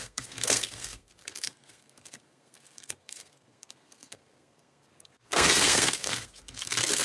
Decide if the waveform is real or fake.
fake